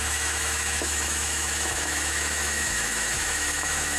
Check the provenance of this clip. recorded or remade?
remade